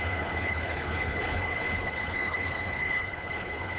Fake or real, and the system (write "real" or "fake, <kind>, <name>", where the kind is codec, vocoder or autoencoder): fake, codec, HILCodec